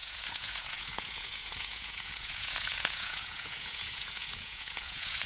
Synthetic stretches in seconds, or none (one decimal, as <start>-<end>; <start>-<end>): 0.0-5.3